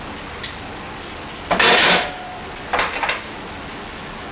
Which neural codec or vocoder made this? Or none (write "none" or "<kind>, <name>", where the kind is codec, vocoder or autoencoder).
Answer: none